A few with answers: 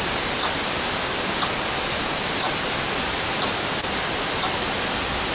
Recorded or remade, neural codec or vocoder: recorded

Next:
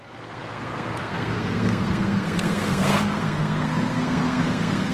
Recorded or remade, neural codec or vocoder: remade, codec, SNAC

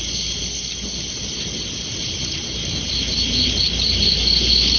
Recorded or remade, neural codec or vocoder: recorded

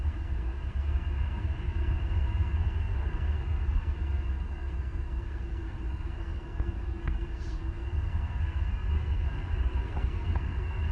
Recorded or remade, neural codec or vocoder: remade, codec, SNAC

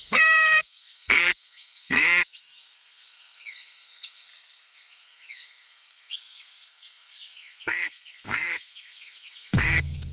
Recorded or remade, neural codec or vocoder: remade, codec, SNAC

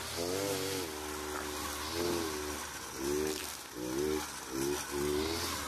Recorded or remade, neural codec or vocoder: recorded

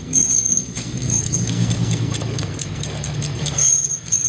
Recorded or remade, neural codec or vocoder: remade, codec, SNAC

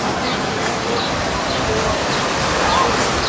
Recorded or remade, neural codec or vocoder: recorded